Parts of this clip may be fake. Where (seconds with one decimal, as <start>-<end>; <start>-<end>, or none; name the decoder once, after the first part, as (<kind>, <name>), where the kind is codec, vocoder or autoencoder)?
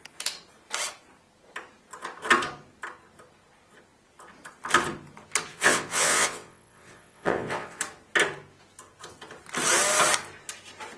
5.5-7.8 (vocoder, WaveNeXt)